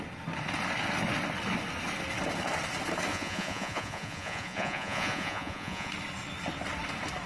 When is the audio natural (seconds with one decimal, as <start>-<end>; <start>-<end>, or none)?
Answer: 0.0-3.1; 5.9-7.3